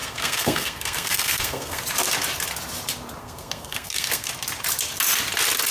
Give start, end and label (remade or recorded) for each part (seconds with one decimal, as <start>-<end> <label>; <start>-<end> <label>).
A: 0.0-1.8 remade; 1.8-3.2 recorded; 3.2-4.3 remade; 4.3-5.7 recorded